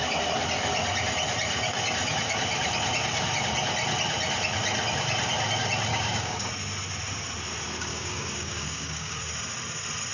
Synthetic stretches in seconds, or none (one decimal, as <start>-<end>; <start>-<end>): 5.9-6.5; 7.9-9.2